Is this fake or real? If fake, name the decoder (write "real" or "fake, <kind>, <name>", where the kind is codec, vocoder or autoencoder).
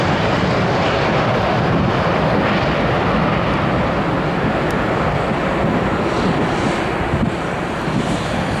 real